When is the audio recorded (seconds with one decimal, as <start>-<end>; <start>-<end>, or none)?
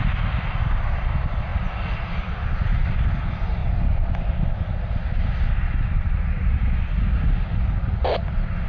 0.0-8.7